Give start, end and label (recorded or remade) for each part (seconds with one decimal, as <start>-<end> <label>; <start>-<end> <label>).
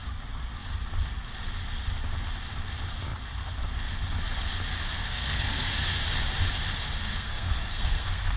0.0-5.0 recorded; 5.0-5.7 remade; 5.7-7.0 recorded; 7.0-8.4 remade